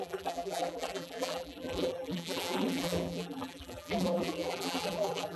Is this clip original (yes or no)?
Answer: no